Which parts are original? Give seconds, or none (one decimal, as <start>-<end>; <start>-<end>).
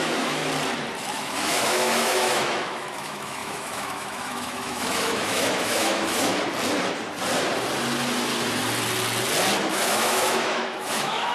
0.4-1.0; 6.3-9.6